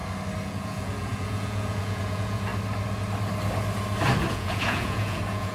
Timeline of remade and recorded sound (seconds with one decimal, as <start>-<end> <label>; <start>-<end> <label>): 0.0-0.5 recorded; 0.5-2.5 remade; 2.5-4.3 recorded; 4.3-5.5 remade

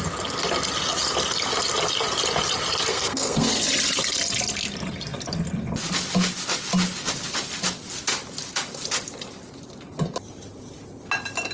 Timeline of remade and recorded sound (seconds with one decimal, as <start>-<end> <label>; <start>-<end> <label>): 0.0-2.9 recorded; 2.9-3.5 remade; 3.5-11.5 recorded

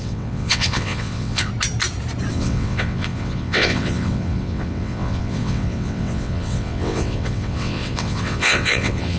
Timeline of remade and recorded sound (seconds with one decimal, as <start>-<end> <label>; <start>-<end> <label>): 0.0-1.5 remade; 1.5-2.3 recorded; 2.3-9.2 remade